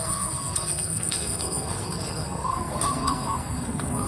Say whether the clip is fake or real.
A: fake